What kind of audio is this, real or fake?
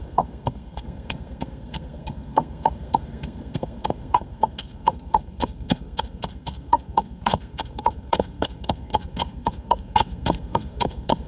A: fake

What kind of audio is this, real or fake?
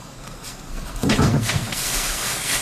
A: fake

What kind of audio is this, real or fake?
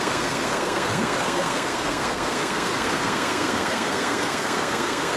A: fake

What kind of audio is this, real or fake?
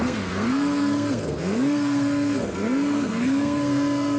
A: fake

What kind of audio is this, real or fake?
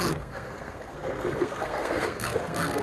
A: fake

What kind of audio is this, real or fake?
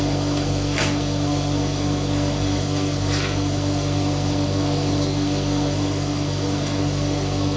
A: fake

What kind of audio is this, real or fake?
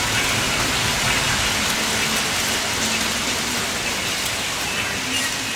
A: real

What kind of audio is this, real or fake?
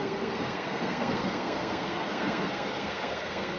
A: fake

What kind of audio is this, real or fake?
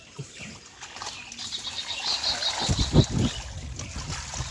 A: real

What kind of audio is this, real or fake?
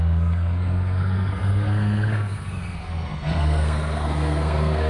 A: fake